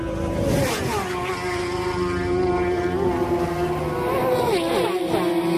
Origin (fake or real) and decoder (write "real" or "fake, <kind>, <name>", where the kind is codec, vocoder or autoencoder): real